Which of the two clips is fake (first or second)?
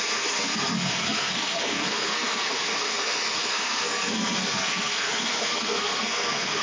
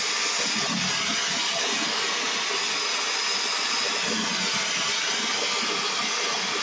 first